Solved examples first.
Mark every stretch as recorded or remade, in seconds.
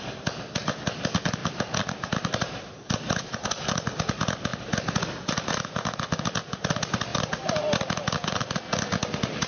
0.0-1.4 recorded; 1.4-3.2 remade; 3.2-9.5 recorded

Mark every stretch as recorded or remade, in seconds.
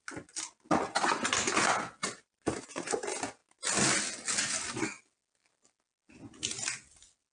0.0-2.0 recorded; 2.0-3.0 remade; 3.0-7.3 recorded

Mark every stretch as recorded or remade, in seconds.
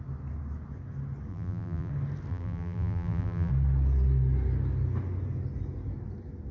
0.0-1.3 recorded; 1.3-1.9 remade; 1.9-2.3 recorded; 2.3-3.5 remade; 3.5-6.5 recorded